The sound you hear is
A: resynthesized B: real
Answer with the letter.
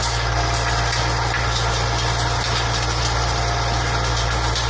B